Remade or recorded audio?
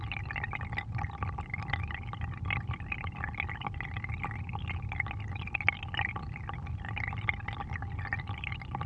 recorded